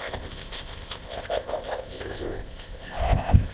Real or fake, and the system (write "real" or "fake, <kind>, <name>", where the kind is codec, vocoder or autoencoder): fake, codec, ZipCodec